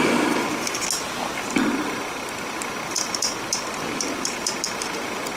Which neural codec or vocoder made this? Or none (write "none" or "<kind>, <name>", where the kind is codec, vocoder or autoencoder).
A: none